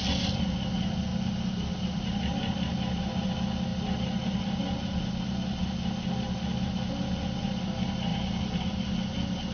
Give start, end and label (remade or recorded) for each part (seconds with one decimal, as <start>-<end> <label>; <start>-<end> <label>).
0.0-1.1 recorded; 1.1-2.2 remade; 2.2-8.1 recorded; 8.1-8.9 remade; 8.9-9.5 recorded